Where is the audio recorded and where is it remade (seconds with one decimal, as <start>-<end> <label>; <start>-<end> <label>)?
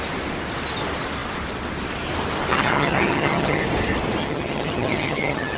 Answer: 0.0-2.5 recorded; 2.5-3.6 remade; 3.6-4.2 recorded; 4.2-5.6 remade